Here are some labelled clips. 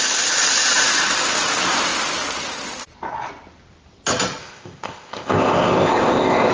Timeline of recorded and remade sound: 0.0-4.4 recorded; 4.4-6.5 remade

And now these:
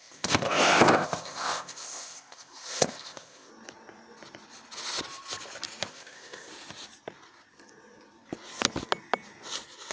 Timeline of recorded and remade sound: 0.0-3.5 remade; 3.5-5.9 recorded; 5.9-6.5 remade; 6.5-9.9 recorded

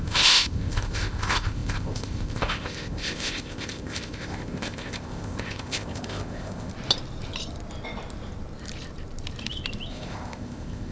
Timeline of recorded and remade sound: 0.0-6.7 remade; 6.7-9.9 recorded; 9.9-10.9 remade

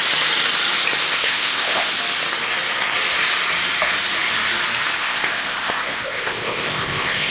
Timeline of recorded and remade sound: 0.0-1.1 recorded; 1.1-1.9 remade; 1.9-5.0 recorded; 5.0-7.3 remade